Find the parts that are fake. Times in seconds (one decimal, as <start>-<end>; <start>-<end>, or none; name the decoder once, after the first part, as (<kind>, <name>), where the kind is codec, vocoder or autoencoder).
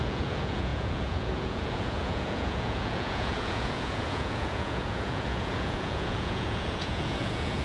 0.0-7.6 (vocoder, Vocos)